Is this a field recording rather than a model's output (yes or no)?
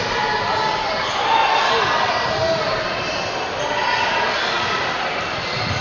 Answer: yes